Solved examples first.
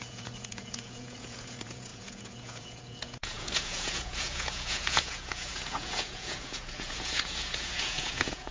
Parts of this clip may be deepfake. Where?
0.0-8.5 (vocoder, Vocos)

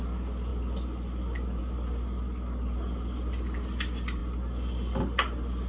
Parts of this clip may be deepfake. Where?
none

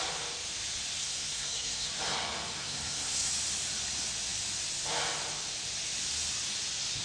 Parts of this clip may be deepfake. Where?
1.0-1.9 (codec, SNAC); 2.6-3.3

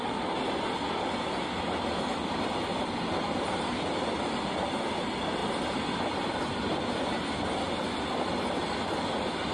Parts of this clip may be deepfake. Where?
none